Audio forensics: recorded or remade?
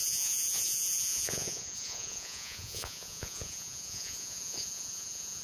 remade